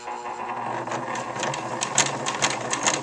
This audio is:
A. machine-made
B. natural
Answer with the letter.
B